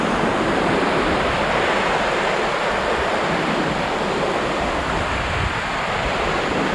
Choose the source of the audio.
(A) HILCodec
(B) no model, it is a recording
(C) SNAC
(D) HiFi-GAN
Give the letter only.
B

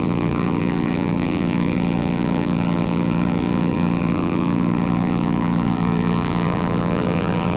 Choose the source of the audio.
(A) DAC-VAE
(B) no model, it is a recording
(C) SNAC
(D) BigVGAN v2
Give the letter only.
D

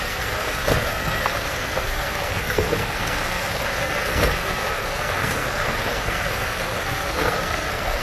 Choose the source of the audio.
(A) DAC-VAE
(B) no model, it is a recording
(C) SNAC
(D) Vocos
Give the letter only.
C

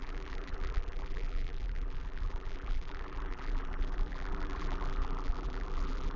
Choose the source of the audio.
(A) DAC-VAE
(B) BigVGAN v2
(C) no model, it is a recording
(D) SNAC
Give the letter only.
B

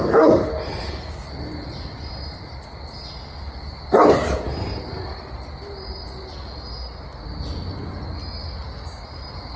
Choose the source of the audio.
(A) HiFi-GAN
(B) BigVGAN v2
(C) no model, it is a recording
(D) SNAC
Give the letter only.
C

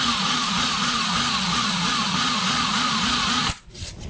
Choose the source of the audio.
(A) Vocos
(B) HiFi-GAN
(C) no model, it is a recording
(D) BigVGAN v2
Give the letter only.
A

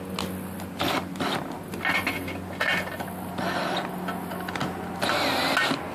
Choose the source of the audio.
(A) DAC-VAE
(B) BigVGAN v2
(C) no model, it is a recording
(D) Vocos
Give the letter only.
C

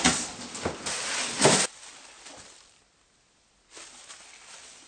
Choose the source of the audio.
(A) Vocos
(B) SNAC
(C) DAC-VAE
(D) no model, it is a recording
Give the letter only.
D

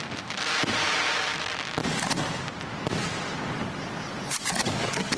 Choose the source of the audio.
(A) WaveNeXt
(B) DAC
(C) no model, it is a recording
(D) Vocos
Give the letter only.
C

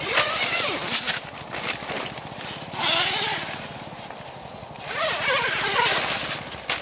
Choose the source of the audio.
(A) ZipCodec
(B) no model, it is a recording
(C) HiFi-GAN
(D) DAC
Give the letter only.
B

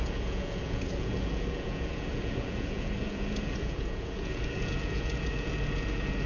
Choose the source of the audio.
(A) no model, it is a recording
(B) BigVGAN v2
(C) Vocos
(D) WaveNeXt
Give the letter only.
C